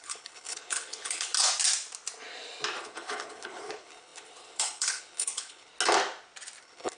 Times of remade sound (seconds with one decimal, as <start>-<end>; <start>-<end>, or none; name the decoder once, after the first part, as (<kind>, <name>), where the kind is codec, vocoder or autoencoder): 0.0-1.3 (codec, HILCodec); 2.8-5.7; 6.6-7.0